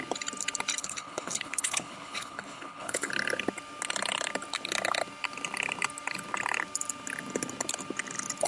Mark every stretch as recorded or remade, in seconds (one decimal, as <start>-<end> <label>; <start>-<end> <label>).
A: 0.0-0.8 recorded; 0.8-3.1 remade; 3.1-8.5 recorded